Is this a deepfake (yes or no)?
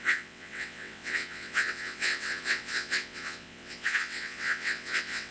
yes